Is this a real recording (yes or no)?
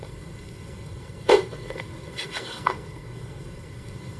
no